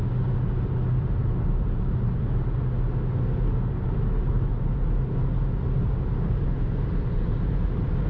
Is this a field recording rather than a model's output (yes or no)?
yes